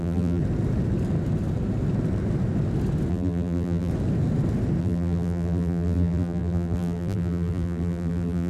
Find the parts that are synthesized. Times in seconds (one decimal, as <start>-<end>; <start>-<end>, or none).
0.0-0.4; 3.1-3.9; 4.8-8.5